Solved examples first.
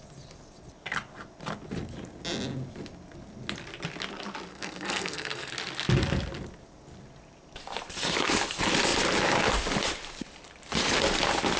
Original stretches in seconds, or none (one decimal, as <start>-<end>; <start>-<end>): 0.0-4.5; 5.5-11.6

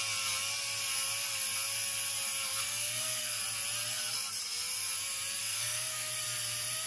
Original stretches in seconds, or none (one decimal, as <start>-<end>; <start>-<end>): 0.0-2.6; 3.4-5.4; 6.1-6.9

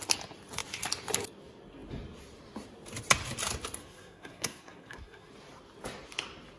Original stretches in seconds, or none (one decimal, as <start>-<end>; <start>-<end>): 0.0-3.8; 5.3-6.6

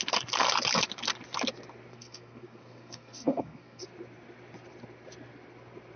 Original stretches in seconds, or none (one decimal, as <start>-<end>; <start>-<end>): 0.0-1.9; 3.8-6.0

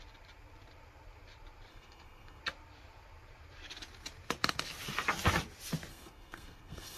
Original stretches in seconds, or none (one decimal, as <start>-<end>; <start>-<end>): 0.0-1.7; 2.4-5.9